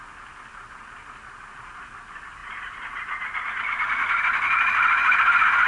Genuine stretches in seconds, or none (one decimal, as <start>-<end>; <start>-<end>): 0.0-2.4; 4.2-5.7